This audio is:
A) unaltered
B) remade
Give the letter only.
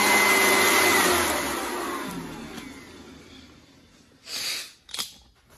A